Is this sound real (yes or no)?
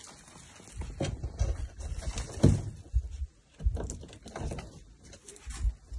yes